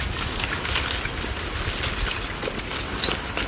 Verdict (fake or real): real